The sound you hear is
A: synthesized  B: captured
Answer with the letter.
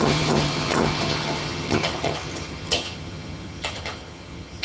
A